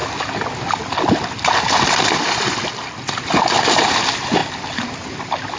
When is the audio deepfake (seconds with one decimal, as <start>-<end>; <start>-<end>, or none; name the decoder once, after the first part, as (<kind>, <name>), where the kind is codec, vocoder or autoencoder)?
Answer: none